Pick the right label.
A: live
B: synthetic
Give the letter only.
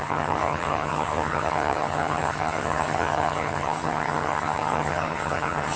B